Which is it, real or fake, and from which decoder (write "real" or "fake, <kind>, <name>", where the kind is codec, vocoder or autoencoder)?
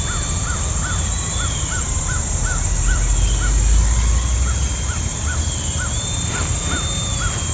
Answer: real